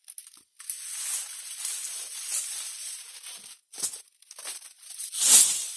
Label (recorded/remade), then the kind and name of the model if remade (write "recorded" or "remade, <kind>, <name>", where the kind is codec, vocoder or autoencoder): recorded